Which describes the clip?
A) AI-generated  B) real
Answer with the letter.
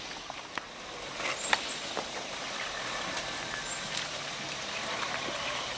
B